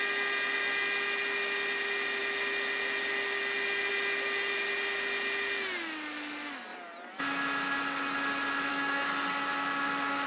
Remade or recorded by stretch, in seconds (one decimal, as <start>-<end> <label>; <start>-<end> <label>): 0.0-8.7 recorded; 8.7-9.3 remade; 9.3-10.3 recorded